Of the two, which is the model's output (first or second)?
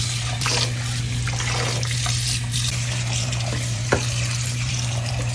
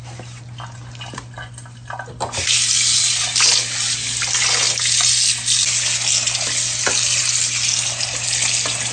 first